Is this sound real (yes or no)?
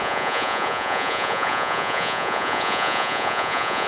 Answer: no